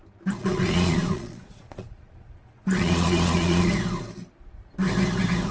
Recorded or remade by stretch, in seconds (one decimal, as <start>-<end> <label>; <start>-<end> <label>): 0.0-0.4 recorded; 0.4-3.7 remade; 3.7-5.5 recorded